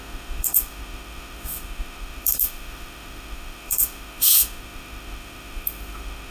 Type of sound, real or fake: fake